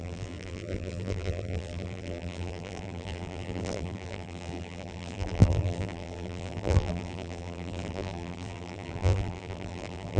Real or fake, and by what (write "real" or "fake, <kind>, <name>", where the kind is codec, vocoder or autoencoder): fake, vocoder, BigVGAN v2